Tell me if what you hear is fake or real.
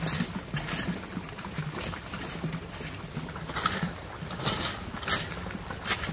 real